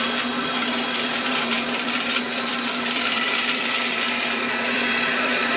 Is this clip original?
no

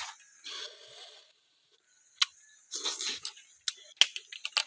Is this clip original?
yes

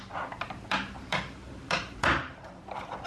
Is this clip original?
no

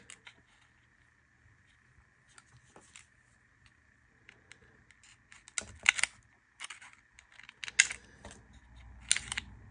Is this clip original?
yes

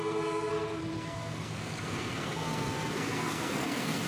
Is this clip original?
no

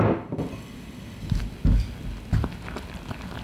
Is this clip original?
yes